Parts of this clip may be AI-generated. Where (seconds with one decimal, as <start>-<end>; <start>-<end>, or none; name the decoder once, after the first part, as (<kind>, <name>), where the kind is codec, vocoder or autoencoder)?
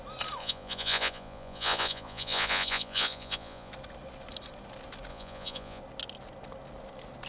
0.4-3.7 (vocoder, Vocos); 5.1-5.8